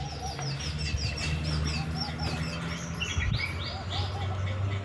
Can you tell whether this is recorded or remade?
recorded